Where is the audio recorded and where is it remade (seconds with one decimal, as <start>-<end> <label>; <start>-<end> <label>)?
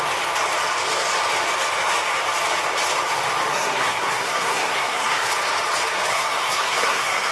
0.0-3.5 recorded; 3.5-5.3 remade; 5.3-6.1 recorded; 6.1-7.3 remade